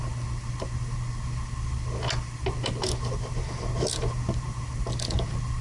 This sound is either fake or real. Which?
real